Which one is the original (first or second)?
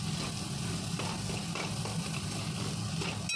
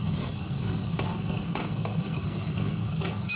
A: first